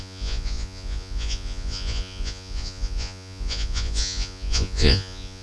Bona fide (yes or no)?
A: no